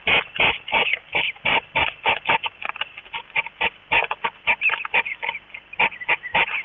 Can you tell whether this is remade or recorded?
recorded